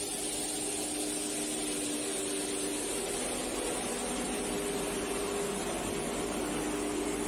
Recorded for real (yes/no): yes